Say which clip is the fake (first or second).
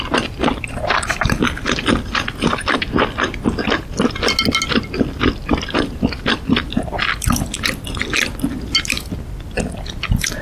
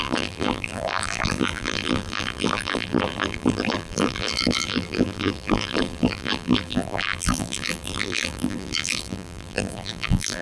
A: second